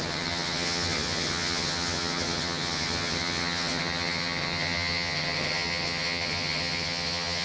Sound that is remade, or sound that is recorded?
remade